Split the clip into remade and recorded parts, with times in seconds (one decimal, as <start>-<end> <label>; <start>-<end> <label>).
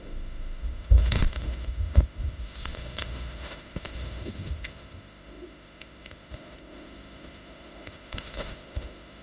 0.0-9.2 remade